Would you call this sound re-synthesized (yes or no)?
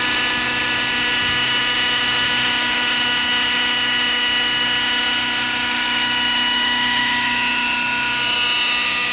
no